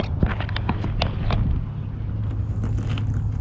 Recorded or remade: recorded